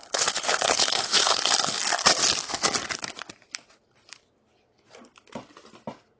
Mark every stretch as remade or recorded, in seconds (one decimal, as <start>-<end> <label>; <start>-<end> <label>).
0.0-1.4 remade; 1.4-6.2 recorded